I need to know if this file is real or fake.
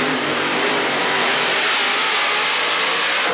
real